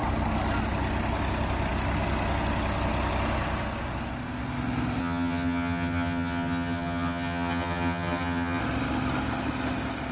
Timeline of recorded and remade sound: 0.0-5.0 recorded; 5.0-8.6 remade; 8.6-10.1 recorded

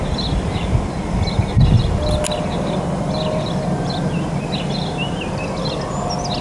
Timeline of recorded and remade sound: 0.0-6.4 recorded

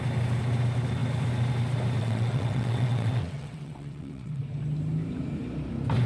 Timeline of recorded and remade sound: 0.0-2.0 recorded; 2.0-4.4 remade; 4.4-6.1 recorded

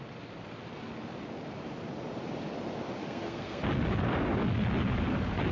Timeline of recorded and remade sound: 0.0-3.0 recorded; 3.0-3.6 remade; 3.6-5.5 recorded

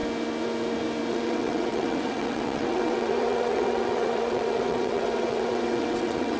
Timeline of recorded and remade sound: 0.0-1.1 recorded; 1.1-6.4 remade

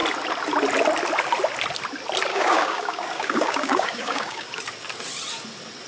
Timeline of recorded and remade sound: 0.0-2.3 recorded; 2.3-4.6 remade; 4.6-5.9 recorded

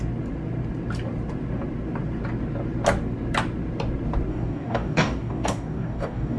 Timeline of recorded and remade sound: 0.0-4.3 recorded; 4.3-6.4 remade